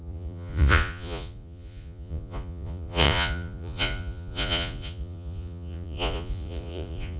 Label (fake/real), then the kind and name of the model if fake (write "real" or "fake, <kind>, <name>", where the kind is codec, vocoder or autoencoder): fake, vocoder, Vocos